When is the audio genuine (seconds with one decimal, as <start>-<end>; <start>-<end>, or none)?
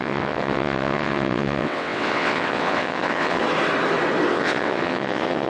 3.4-4.3